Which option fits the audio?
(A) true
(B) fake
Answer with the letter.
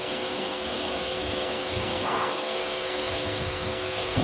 B